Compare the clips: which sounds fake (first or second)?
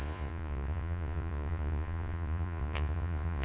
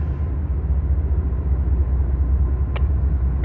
first